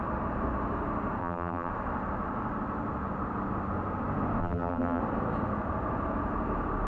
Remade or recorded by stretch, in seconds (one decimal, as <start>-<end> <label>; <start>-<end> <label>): 0.0-1.2 recorded; 1.2-1.7 remade; 1.7-4.4 recorded; 4.4-5.0 remade; 5.0-6.9 recorded